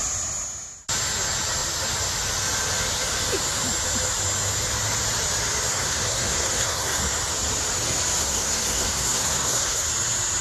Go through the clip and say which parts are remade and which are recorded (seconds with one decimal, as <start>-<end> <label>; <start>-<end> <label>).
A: 0.0-5.7 recorded; 5.7-7.0 remade; 7.0-8.2 recorded; 8.2-9.9 remade; 9.9-10.4 recorded